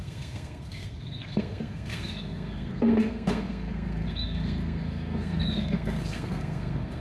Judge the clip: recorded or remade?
remade